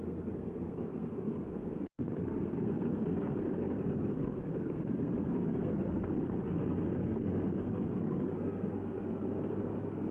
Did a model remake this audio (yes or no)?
yes